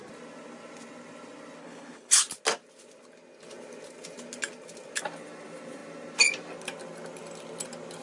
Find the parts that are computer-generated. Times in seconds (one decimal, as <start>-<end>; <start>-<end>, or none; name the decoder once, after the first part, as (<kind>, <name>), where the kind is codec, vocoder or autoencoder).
1.6-2.2 (codec, HILCodec)